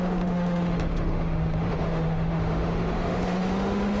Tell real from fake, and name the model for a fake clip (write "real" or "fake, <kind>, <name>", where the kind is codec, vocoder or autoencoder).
fake, autoencoder, DAC-VAE